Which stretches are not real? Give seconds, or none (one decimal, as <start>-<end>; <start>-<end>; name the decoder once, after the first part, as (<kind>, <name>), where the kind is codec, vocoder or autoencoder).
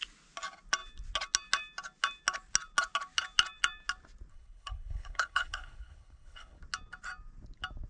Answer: 4.3-6.6 (codec, HILCodec)